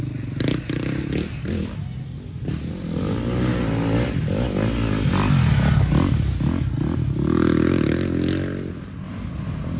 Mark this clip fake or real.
real